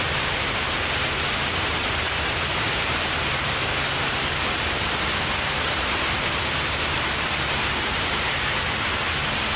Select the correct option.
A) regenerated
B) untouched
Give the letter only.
A